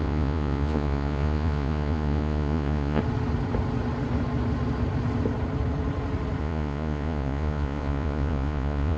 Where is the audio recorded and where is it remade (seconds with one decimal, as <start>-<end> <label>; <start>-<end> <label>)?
0.0-3.0 remade; 3.0-6.4 recorded; 6.4-9.0 remade